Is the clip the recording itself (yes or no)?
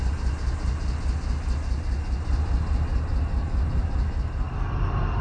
yes